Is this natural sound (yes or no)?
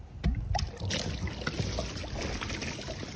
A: yes